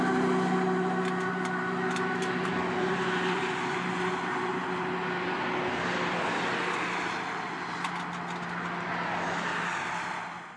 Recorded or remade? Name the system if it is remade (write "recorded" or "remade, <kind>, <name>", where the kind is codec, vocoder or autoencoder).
recorded